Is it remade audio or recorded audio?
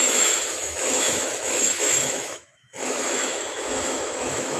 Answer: remade